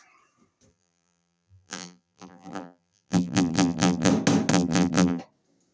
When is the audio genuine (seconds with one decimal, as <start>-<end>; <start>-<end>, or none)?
0.0-0.7; 4.1-4.5; 5.2-5.7